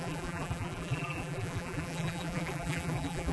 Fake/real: fake